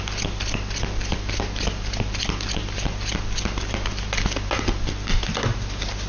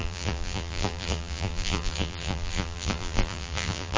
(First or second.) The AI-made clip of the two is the second